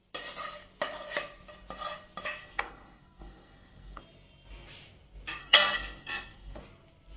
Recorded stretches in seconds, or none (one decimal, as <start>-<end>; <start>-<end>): 0.0-2.4; 4.0-5.4; 6.6-7.2